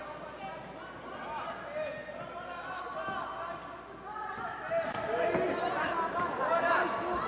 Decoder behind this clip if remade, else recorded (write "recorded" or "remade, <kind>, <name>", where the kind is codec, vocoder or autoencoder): recorded